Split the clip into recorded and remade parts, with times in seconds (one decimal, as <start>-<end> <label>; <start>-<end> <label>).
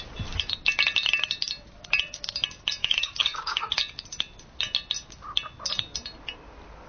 0.0-2.8 recorded; 2.8-3.8 remade; 3.8-6.9 recorded